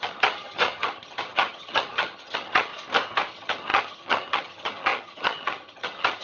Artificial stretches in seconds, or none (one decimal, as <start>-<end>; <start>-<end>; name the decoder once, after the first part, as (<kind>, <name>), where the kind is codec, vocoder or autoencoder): 0.0-2.7 (vocoder, HiFi-GAN); 3.3-6.2